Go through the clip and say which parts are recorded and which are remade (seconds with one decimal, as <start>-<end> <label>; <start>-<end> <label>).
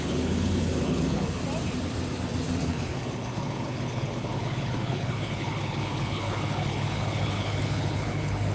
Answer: 0.0-1.4 remade; 1.4-2.6 recorded; 2.6-8.5 remade